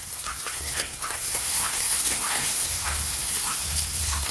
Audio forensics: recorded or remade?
remade